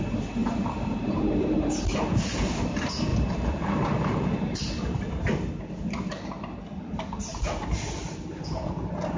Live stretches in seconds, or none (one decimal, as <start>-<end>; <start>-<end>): 0.0-0.4; 1.7-3.1; 4.6-7.3; 8.1-9.2